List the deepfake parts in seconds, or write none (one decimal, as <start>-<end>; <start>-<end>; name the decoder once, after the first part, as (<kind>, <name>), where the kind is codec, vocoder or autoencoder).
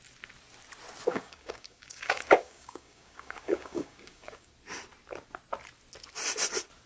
1.1-4.5 (codec, DAC)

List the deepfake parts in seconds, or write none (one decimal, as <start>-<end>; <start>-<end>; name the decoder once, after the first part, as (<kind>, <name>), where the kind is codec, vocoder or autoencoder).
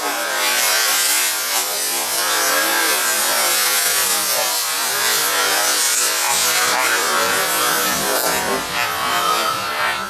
none